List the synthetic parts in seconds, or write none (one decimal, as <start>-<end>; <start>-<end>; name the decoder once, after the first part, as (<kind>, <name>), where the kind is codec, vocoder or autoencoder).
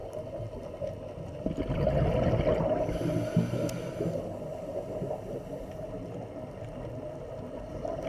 none